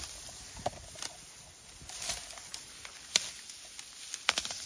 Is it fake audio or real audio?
real